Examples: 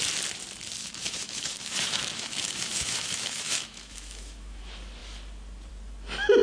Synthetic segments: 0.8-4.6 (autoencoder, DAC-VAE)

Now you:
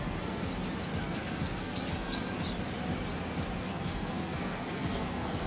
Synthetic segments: 0.0-0.5 (codec, SNAC); 1.0-2.2; 3.7-5.5

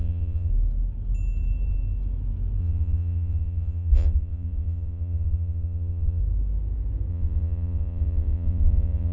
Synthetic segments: 0.0-0.5 (vocoder, Vocos); 2.6-6.2; 7.1-9.1

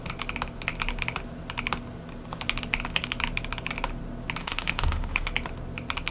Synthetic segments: 4.4-5.3 (autoencoder, DAC-VAE)

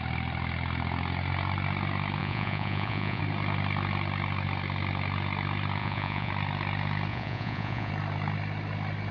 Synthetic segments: 2.2-3.2 (vocoder, Vocos); 5.8-6.3; 7.1-7.9